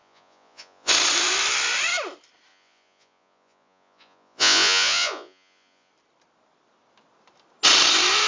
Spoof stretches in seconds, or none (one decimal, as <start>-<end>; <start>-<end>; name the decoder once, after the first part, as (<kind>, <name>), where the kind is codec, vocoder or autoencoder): 0.0-0.9 (vocoder, Vocos); 2.5-5.9